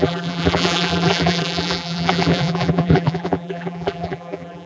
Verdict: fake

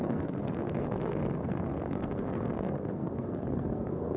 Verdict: fake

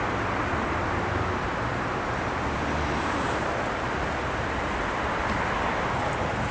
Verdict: fake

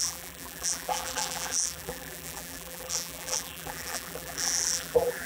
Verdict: fake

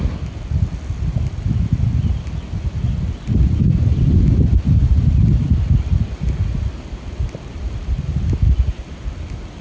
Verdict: real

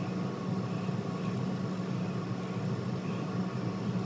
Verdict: real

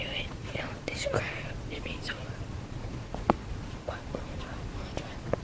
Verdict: fake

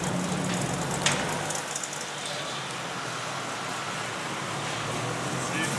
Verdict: real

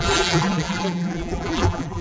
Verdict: fake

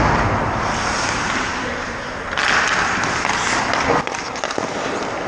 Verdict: real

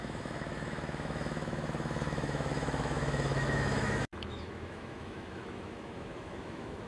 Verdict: fake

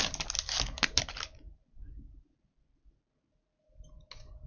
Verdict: real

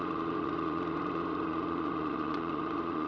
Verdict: fake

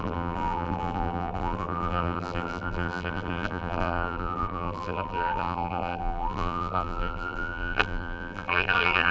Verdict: fake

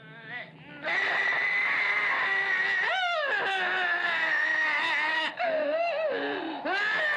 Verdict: real